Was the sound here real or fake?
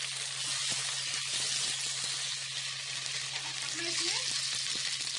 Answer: real